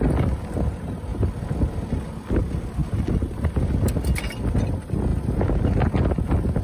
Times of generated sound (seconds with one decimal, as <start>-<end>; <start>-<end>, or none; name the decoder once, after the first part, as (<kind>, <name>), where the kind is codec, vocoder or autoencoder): 5.1-6.0 (vocoder, BigVGAN v2)